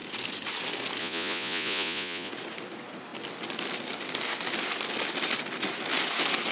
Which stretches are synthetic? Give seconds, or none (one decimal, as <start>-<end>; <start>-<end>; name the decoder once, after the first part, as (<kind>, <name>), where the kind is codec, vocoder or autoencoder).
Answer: 1.0-2.3 (vocoder, Vocos)